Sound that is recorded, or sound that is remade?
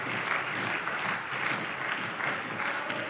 recorded